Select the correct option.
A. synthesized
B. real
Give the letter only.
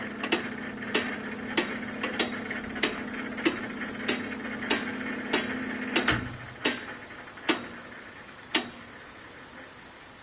B